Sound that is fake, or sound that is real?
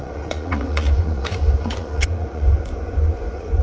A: fake